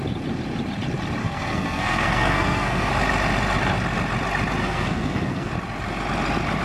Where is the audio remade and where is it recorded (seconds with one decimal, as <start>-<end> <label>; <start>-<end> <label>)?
0.0-1.2 recorded; 1.2-2.9 remade; 2.9-4.6 recorded; 4.6-5.5 remade; 5.5-6.6 recorded

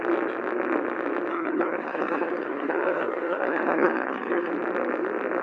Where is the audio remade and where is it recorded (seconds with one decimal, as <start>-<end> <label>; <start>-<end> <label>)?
0.0-1.3 recorded; 1.3-4.5 remade; 4.5-5.4 recorded